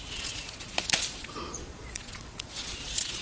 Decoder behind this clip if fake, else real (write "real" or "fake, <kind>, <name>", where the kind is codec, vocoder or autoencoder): fake, vocoder, Vocos